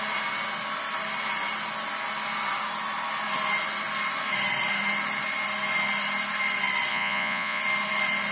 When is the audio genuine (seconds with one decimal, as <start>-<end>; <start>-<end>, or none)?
0.0-6.9; 7.6-8.3